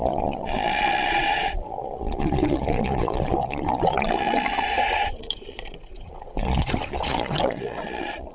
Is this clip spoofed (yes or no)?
yes